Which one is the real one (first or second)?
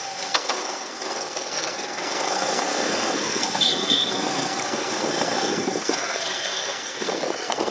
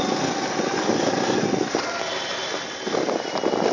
second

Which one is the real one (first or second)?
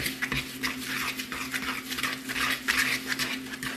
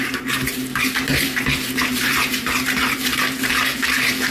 first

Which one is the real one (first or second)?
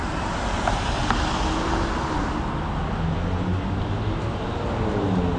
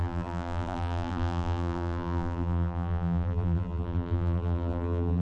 first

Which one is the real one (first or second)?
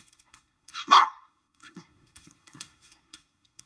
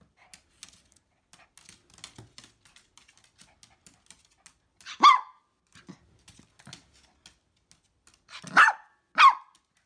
second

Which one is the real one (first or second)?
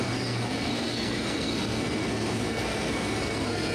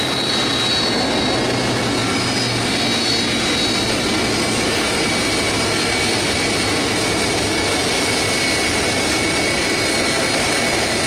second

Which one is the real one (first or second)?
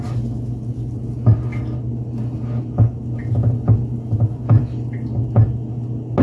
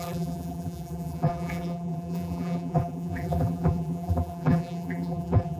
first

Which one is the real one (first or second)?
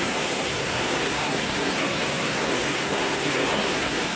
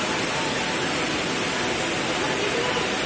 second